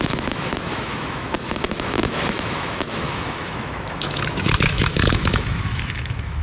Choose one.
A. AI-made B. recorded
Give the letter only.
A